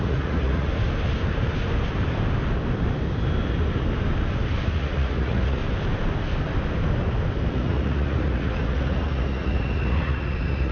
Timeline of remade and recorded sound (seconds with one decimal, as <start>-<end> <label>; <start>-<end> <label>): 0.0-0.7 remade; 0.7-4.7 recorded; 4.7-5.6 remade; 5.6-7.5 recorded; 7.5-10.7 remade